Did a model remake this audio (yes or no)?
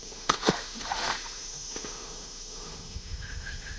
yes